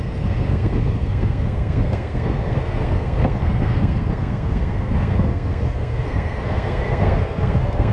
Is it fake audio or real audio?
fake